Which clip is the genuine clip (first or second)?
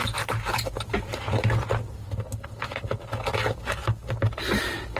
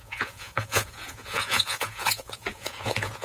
first